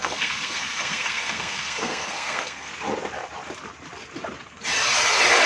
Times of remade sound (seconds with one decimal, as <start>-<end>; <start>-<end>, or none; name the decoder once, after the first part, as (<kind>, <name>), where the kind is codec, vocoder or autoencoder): 0.0-2.7 (codec, SNAC)